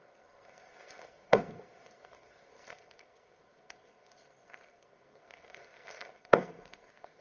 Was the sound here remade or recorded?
remade